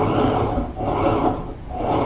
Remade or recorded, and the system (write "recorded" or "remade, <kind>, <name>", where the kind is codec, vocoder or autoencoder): recorded